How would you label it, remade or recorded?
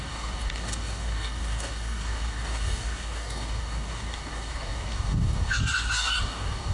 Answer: remade